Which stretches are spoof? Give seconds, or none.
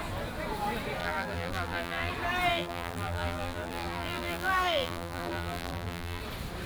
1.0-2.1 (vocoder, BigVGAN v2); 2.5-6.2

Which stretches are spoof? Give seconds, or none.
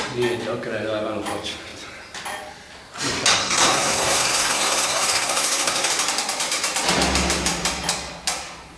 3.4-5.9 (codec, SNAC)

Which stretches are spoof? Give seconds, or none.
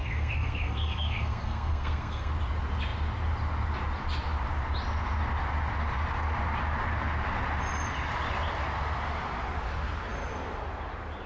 0.0-2.3 (codec, SNAC)